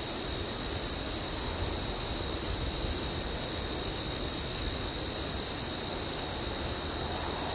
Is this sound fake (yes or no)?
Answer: no